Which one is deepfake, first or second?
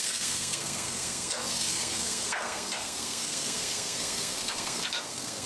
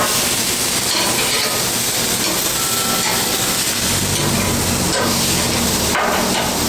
first